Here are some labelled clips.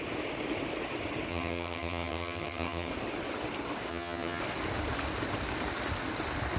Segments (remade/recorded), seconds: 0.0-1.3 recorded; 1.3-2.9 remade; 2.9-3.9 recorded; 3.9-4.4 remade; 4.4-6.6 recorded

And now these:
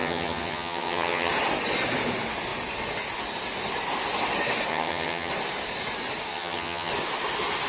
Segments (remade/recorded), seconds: 0.0-1.3 remade; 1.3-4.7 recorded; 4.7-5.3 remade; 5.3-6.3 recorded; 6.3-6.9 remade; 6.9-7.7 recorded

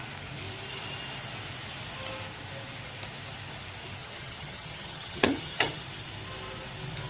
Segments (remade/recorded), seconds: 0.0-4.0 recorded; 4.0-5.8 remade; 5.8-7.1 recorded

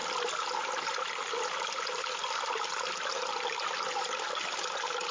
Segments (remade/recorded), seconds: 0.0-5.1 recorded

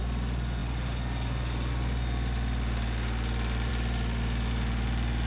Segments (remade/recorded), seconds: 0.0-5.3 recorded

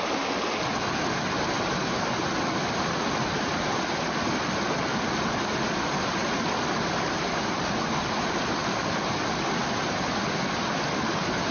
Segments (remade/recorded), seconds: 0.0-11.5 recorded

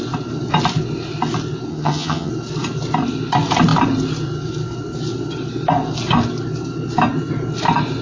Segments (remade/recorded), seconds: 0.0-1.7 recorded; 1.7-2.3 remade; 2.3-8.0 recorded